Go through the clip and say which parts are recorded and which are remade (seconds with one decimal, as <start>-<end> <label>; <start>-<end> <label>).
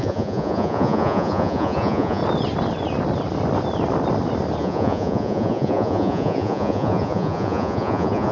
0.0-2.2 remade; 2.2-4.6 recorded; 4.6-8.3 remade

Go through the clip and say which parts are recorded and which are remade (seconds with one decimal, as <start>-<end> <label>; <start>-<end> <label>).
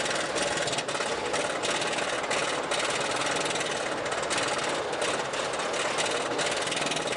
0.0-7.2 recorded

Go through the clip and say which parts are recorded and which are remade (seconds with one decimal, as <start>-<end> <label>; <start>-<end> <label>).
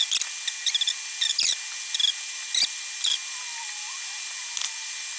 0.0-5.2 recorded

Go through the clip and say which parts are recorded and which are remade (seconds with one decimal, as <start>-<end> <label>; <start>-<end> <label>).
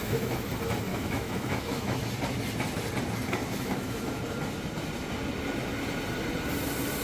0.0-0.5 remade; 0.5-0.9 recorded; 0.9-2.0 remade; 2.0-3.4 recorded; 3.4-4.2 remade; 4.2-7.0 recorded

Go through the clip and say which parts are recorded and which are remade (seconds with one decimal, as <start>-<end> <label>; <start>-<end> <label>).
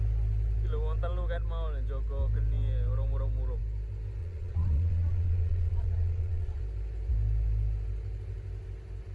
0.0-4.2 recorded; 4.2-6.6 remade; 6.6-9.1 recorded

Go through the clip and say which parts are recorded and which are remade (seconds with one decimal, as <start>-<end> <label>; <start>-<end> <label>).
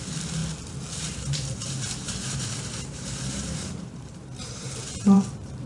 0.0-0.4 remade; 0.4-1.0 recorded; 1.0-5.7 remade